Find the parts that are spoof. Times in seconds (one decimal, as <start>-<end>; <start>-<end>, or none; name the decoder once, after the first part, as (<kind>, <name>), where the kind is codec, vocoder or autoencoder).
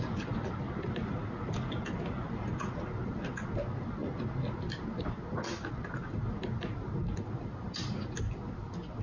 none